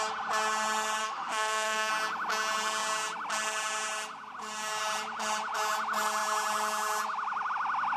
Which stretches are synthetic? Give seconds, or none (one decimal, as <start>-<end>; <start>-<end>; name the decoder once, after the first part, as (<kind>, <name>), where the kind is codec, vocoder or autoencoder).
1.0-1.9 (autoencoder, DAC-VAE)

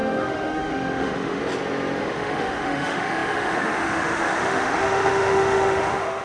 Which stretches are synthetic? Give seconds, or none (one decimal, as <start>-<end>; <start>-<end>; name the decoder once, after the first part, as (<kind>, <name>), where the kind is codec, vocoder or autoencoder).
0.0-1.4 (autoencoder, DAC-VAE); 2.0-6.2

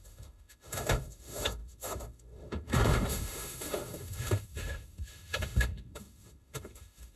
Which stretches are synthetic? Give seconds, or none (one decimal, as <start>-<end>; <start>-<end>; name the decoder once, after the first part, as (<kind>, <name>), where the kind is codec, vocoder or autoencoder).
0.0-7.2 (autoencoder, DAC-VAE)

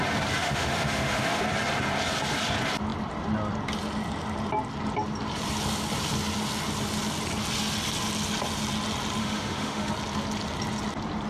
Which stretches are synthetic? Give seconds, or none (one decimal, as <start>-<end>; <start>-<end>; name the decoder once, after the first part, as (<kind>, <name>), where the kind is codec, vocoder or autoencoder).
0.4-1.4 (autoencoder, DAC-VAE); 9.2-9.9

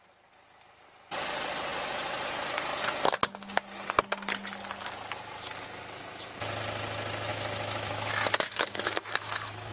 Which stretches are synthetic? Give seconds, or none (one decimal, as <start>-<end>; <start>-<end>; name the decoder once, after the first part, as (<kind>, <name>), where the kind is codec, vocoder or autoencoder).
7.3-9.7 (autoencoder, DAC-VAE)

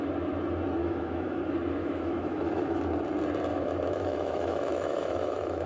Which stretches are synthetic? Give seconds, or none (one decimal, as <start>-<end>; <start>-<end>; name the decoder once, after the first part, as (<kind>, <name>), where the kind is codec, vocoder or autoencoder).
0.8-1.4 (autoencoder, DAC-VAE); 1.8-2.8; 3.5-5.7